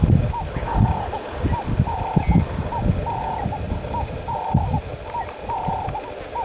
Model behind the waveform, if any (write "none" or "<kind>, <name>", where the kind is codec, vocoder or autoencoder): none